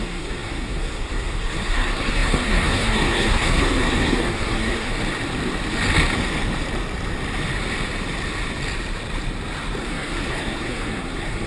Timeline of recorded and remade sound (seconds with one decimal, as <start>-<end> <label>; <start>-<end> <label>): 0.0-4.9 remade; 4.9-9.8 recorded; 9.8-11.5 remade